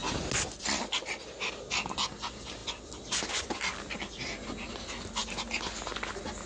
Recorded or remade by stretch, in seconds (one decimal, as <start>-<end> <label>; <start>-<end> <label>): 0.0-6.5 recorded